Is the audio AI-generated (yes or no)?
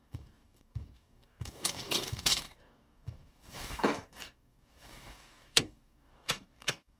yes